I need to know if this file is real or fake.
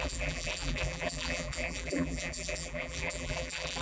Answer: fake